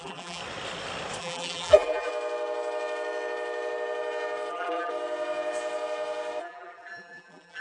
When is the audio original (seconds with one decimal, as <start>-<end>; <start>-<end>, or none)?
0.4-1.2; 2.1-4.5; 4.9-6.4